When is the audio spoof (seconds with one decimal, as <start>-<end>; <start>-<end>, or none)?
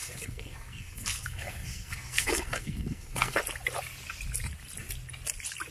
0.0-3.4